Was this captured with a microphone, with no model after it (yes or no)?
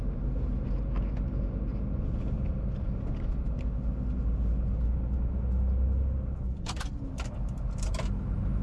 yes